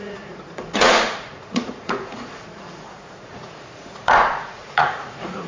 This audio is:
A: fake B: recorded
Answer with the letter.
A